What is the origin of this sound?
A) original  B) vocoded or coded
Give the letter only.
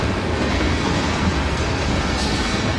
B